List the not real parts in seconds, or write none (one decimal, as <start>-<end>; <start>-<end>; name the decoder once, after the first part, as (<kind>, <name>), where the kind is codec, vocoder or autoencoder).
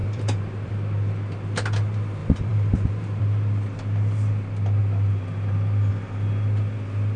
0.0-0.7 (vocoder, BigVGAN v2); 2.2-3.2